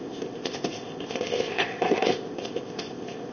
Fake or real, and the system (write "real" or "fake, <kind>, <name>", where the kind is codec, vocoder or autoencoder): fake, codec, ZipCodec